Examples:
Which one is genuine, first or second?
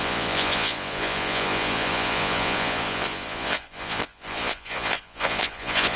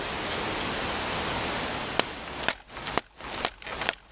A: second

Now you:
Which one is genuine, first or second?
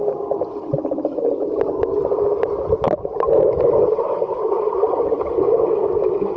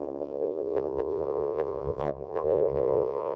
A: first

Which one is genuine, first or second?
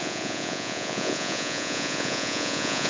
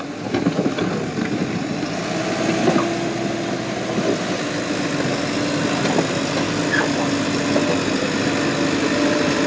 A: second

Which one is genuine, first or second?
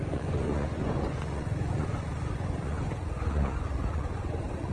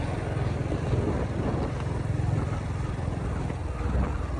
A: second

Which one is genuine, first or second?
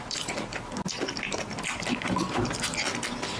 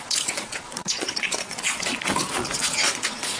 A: first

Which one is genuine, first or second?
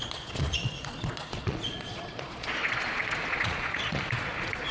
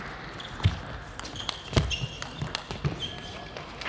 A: second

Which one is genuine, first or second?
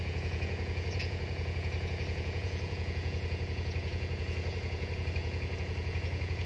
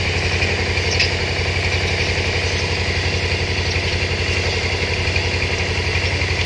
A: second